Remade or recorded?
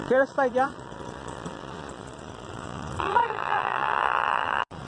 remade